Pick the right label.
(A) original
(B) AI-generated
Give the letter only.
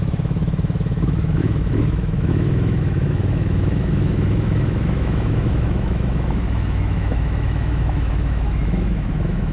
B